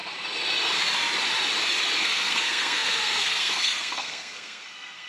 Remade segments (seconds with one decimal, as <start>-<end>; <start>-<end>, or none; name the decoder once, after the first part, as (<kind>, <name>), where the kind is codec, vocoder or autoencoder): 2.0-5.1 (codec, SNAC)